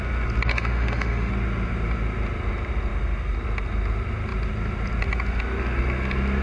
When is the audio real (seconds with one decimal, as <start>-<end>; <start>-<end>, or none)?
0.0-0.5; 1.3-6.4